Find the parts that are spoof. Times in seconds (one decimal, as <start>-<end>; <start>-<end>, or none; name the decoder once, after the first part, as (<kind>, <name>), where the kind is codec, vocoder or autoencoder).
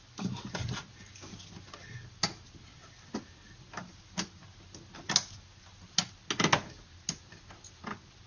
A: none